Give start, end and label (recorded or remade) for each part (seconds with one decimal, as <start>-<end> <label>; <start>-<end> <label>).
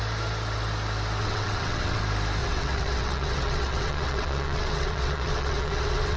0.0-1.2 recorded; 1.2-2.0 remade; 2.0-2.4 recorded; 2.4-6.2 remade